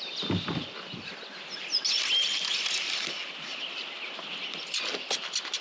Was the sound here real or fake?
real